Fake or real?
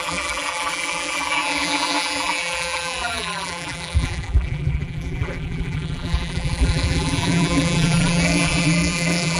fake